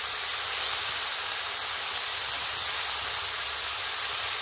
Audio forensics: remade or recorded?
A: recorded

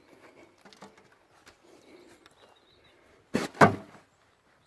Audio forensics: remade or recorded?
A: recorded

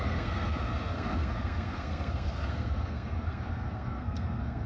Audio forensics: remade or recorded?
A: remade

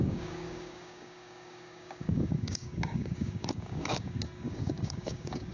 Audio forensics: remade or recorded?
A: remade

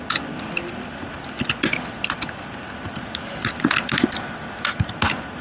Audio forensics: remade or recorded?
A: recorded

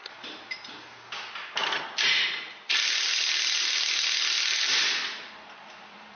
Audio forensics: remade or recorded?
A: recorded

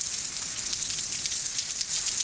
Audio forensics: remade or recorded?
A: recorded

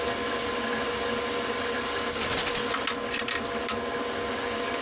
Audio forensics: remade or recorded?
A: recorded